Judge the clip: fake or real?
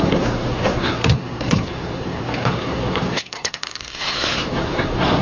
fake